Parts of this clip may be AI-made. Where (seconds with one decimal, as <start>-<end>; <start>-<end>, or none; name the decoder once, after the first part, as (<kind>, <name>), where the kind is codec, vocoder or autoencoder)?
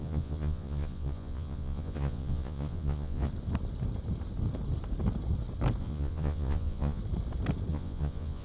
0.0-3.3 (vocoder, Vocos); 5.8-7.0; 7.7-8.4